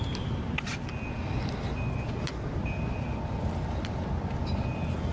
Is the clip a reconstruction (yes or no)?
no